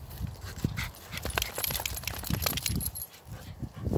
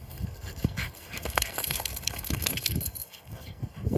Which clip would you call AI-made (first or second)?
second